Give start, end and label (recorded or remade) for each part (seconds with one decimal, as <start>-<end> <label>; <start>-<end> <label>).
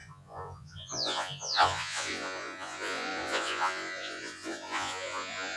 0.0-5.6 remade